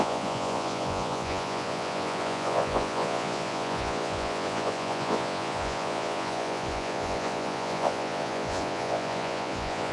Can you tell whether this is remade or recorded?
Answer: remade